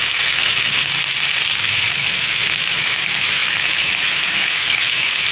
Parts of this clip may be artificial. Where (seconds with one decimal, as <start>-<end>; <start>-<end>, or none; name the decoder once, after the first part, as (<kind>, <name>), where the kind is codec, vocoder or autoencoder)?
0.0-0.9 (autoencoder, DAC-VAE); 1.6-5.3